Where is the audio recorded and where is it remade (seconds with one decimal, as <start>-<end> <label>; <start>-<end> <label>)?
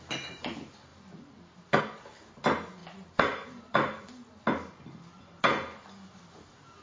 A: 0.0-6.8 recorded